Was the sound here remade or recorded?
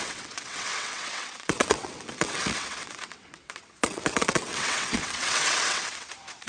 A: remade